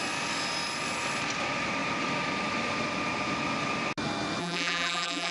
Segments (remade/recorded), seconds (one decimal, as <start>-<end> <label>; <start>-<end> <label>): 0.0-4.4 recorded; 4.4-5.3 remade